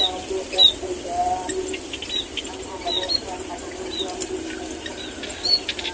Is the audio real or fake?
real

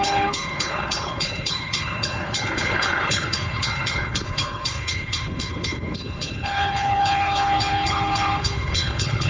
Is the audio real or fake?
fake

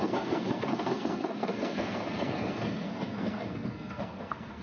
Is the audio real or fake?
fake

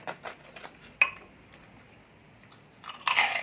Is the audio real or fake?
real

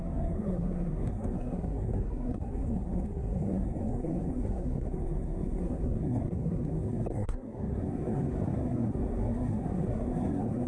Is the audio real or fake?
fake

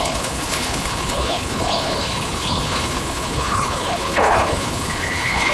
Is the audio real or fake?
fake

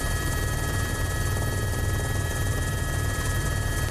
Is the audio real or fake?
fake